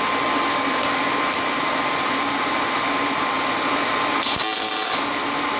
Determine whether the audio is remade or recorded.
recorded